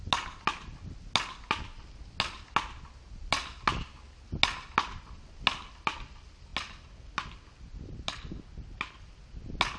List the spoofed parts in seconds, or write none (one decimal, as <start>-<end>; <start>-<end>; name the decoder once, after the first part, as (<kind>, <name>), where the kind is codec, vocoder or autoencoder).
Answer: none